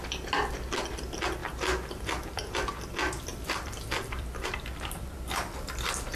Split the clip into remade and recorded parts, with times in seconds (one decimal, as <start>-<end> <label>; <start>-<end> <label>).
0.0-3.3 recorded; 3.3-5.0 remade; 5.0-6.2 recorded